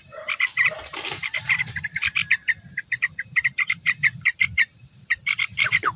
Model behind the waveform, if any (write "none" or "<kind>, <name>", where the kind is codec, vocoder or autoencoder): vocoder, BigVGAN v2